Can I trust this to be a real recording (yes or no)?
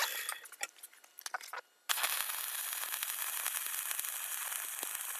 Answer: yes